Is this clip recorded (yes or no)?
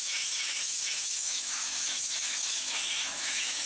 no